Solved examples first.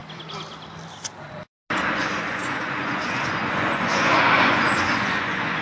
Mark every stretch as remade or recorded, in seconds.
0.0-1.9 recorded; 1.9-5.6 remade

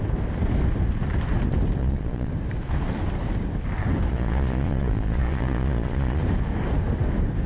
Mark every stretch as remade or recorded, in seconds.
0.0-1.8 recorded; 1.8-2.3 remade; 2.3-4.1 recorded; 4.1-6.2 remade; 6.2-7.5 recorded

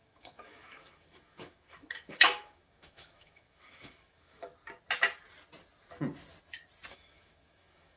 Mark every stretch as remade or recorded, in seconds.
0.0-4.5 remade; 4.5-6.9 recorded; 6.9-8.0 remade